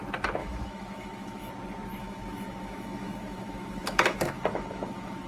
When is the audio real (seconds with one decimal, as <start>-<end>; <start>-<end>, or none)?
0.0-0.4; 1.5-2.0